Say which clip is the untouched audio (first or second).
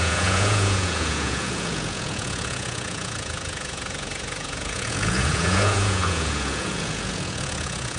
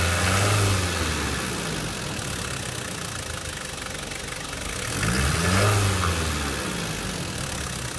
second